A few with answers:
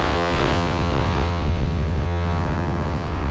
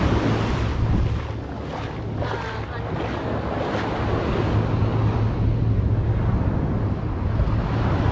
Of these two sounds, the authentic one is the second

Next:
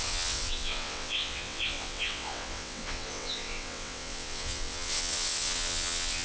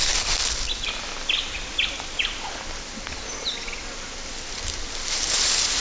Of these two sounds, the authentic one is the second